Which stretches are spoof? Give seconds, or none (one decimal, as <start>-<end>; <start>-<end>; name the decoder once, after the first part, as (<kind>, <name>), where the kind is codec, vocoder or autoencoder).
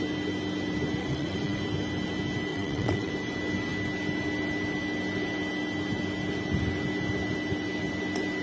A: 1.0-1.6 (vocoder, WaveNeXt); 2.5-3.1